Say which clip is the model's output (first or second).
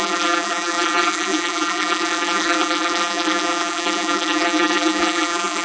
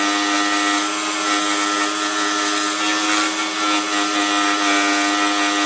first